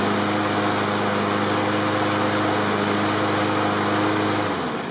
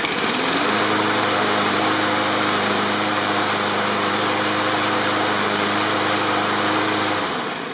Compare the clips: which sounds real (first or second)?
first